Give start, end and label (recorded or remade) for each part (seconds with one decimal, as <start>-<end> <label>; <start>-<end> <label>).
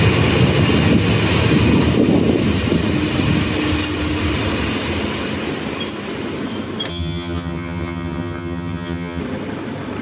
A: 0.0-6.9 recorded; 6.9-9.2 remade; 9.2-10.0 recorded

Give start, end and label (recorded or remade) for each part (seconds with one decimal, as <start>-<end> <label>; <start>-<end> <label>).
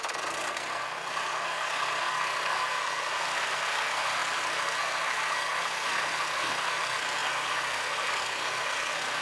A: 0.0-9.2 remade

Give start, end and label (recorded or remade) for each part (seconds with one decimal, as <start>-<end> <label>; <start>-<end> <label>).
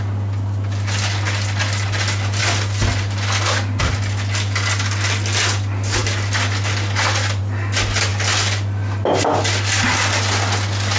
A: 0.0-11.0 recorded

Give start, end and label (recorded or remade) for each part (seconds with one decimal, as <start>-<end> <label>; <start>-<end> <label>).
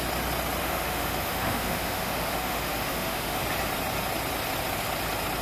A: 0.0-0.6 recorded; 0.6-3.4 remade; 3.4-5.4 recorded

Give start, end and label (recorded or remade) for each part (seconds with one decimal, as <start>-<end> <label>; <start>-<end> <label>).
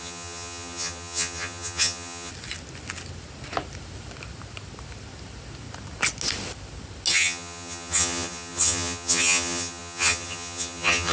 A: 0.0-2.3 remade; 2.3-7.1 recorded; 7.1-11.1 remade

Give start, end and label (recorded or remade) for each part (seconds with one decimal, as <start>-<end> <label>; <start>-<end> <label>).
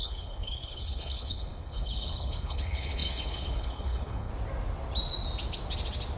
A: 0.0-4.3 remade; 4.3-6.2 recorded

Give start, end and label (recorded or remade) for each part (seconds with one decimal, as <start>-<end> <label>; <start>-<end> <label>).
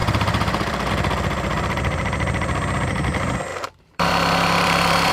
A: 0.0-0.9 remade; 0.9-3.5 recorded; 3.5-5.1 remade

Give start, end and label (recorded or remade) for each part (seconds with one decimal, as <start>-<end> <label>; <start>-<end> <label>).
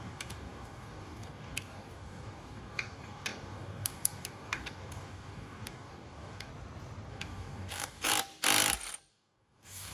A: 0.0-6.5 remade; 6.5-7.1 recorded; 7.1-8.1 remade; 8.1-9.1 recorded; 9.1-9.9 remade